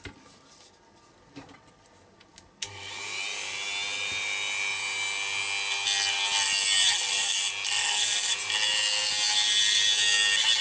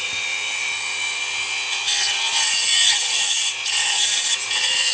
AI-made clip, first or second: second